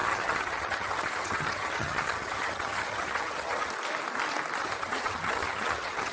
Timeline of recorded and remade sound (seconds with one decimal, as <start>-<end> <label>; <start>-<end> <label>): 0.0-3.7 remade; 3.7-4.6 recorded; 4.6-6.1 remade